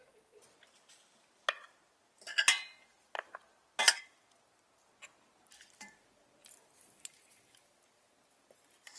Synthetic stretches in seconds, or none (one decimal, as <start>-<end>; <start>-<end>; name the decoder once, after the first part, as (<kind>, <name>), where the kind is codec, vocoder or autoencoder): none